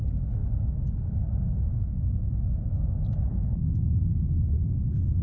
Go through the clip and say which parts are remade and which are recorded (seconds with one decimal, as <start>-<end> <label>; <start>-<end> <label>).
0.0-5.2 recorded